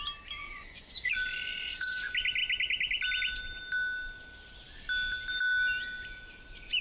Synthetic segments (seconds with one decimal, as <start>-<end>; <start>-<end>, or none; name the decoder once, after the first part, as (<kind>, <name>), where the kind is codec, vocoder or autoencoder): 0.4-2.0 (vocoder, Vocos)